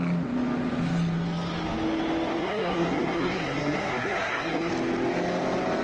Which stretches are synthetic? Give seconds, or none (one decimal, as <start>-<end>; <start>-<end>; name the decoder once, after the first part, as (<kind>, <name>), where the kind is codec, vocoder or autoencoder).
2.4-4.7 (codec, SNAC)